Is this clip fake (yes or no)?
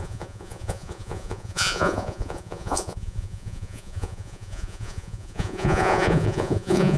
yes